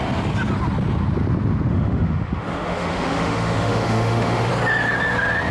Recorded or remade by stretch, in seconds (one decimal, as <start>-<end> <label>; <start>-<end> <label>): 0.0-1.7 recorded; 1.7-4.5 remade; 4.5-5.5 recorded